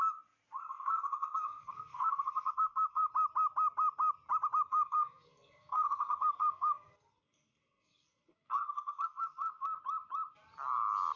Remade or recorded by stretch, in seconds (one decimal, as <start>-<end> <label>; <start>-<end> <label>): 0.0-0.7 recorded; 0.7-3.1 remade; 3.1-4.7 recorded; 4.7-9.8 remade; 9.8-11.2 recorded